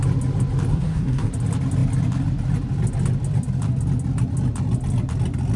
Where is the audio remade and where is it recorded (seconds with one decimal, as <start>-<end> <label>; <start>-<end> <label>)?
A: 0.0-0.7 recorded; 0.7-1.3 remade; 1.3-5.6 recorded

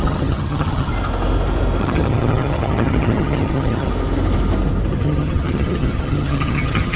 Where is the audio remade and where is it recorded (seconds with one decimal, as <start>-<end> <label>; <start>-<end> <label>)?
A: 0.0-0.9 remade; 0.9-1.8 recorded; 1.8-3.9 remade; 3.9-4.9 recorded; 4.9-7.0 remade

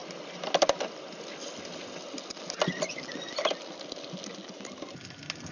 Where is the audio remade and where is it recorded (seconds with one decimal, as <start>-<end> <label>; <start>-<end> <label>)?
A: 0.0-5.5 recorded

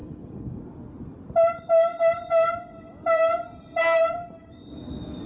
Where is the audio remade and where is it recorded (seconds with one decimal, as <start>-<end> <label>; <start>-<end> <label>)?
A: 0.0-0.6 remade; 0.6-1.9 recorded; 1.9-5.3 remade

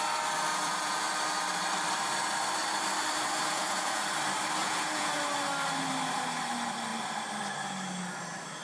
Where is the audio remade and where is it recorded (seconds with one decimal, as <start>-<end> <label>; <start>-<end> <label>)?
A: 0.0-0.5 recorded; 0.5-1.1 remade; 1.1-3.4 recorded; 3.4-4.0 remade; 4.0-4.6 recorded; 4.6-5.2 remade; 5.2-8.6 recorded